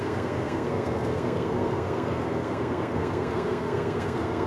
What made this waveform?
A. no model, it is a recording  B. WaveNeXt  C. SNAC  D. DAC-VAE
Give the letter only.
C